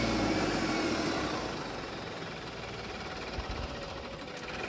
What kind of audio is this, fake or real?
real